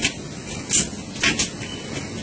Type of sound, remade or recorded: recorded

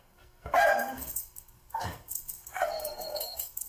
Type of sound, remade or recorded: remade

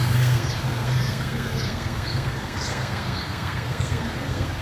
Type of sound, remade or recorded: remade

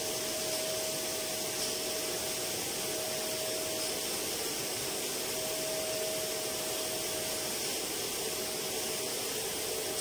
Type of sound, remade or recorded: recorded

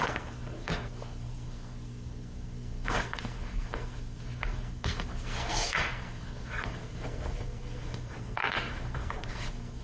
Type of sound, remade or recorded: remade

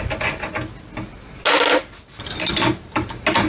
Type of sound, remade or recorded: recorded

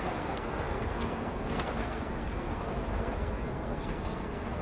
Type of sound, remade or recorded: remade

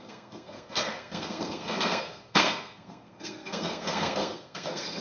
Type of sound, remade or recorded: remade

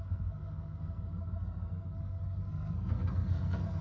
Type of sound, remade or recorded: remade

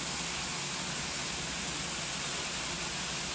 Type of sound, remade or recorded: recorded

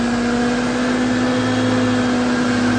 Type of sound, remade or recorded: recorded